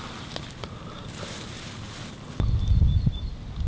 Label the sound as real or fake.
real